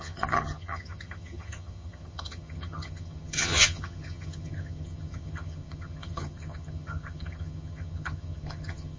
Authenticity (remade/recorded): remade